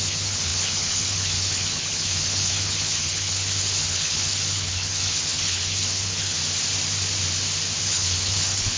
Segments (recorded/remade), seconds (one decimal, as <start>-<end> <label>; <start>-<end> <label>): 0.0-6.4 remade; 6.4-7.8 recorded; 7.8-8.8 remade